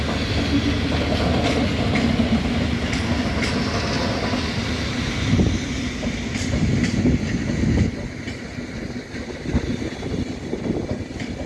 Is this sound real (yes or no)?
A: yes